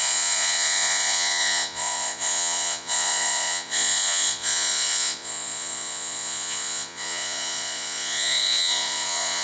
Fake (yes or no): yes